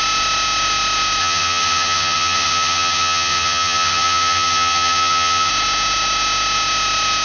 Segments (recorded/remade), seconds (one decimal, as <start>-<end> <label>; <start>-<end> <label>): 0.0-1.2 recorded; 1.2-5.5 remade; 5.5-7.2 recorded